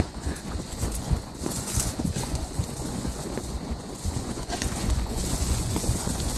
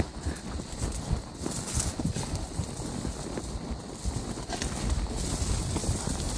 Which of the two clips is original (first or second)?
second